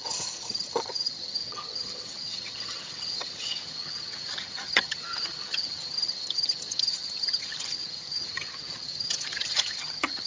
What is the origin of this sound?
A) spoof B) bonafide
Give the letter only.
A